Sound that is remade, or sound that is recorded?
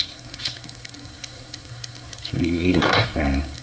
remade